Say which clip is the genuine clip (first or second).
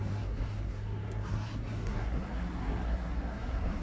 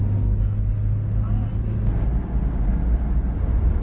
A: second